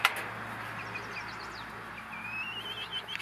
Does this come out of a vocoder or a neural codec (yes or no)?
no